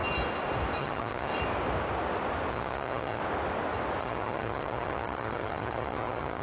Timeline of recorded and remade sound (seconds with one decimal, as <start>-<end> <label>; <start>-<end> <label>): 0.0-0.8 recorded; 0.8-1.3 remade; 1.3-2.5 recorded; 2.5-3.2 remade; 3.2-4.0 recorded; 4.0-6.4 remade